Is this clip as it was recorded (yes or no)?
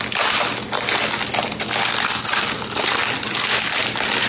yes